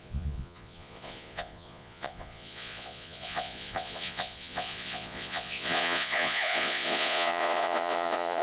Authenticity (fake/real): fake